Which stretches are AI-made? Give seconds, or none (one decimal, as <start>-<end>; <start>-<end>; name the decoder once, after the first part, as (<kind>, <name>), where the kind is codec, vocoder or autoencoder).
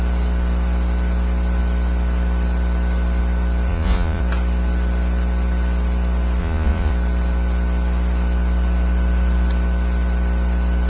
3.7-4.2 (vocoder, Vocos); 6.4-6.9